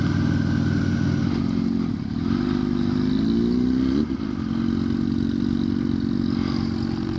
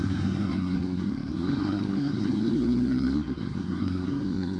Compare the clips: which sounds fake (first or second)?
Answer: second